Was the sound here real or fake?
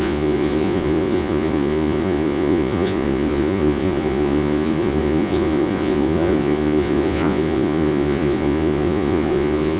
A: fake